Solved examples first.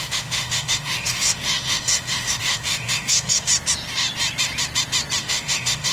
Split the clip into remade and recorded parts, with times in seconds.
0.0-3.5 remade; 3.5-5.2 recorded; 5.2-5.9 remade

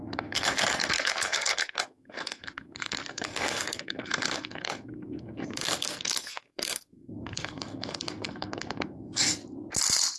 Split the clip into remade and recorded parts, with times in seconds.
0.0-9.4 remade; 9.4-10.2 recorded